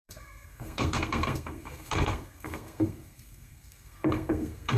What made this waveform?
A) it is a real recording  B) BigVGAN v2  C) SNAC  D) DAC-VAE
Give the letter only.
C